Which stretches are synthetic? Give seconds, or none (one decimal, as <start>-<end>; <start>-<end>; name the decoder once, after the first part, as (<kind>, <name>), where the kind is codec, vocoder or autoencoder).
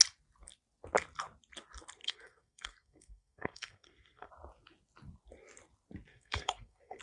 2.0-4.3 (codec, SNAC); 6.1-7.0